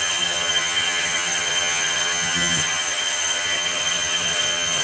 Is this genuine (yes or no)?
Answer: no